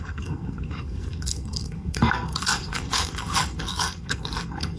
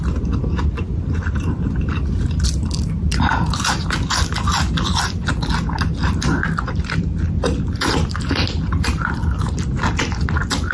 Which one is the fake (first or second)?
first